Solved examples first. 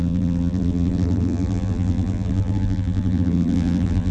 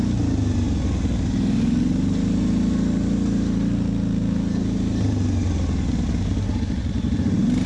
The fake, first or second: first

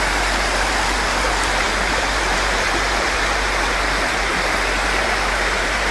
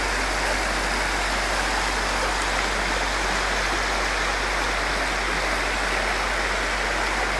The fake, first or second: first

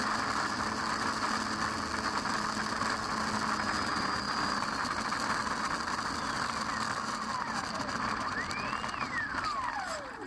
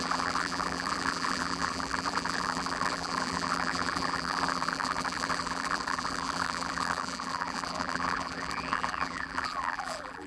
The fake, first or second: second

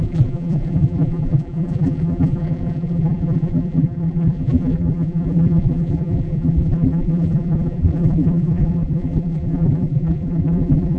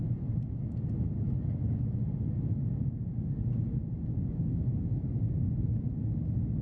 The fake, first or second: first